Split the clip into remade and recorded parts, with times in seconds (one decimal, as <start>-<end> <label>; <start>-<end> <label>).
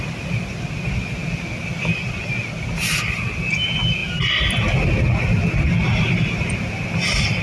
0.0-7.4 recorded